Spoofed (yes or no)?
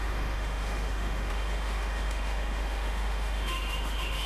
yes